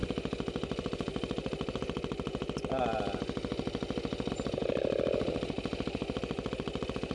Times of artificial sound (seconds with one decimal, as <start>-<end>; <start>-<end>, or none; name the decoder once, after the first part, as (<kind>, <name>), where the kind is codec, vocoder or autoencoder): none